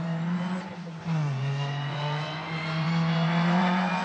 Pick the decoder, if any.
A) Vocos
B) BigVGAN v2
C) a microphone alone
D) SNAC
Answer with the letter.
A